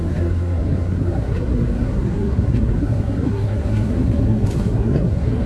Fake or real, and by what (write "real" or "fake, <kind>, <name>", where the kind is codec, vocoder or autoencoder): fake, codec, SNAC